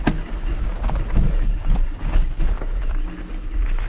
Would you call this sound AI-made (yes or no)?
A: no